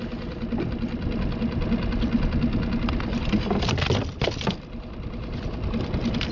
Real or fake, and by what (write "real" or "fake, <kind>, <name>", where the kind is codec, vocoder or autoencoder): real